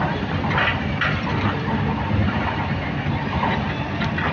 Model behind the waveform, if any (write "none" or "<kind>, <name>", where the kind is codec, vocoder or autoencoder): vocoder, BigVGAN v2